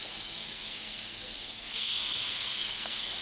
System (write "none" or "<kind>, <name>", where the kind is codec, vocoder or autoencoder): codec, SNAC